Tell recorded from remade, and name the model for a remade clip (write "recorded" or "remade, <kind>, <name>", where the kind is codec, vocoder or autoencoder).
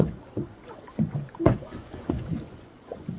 remade, vocoder, Vocos